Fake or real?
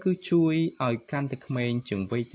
real